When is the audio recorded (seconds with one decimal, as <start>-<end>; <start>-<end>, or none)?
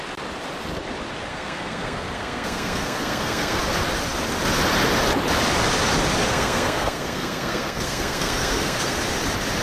0.0-1.3; 3.6-6.2; 9.0-9.6